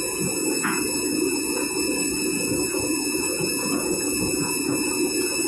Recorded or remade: remade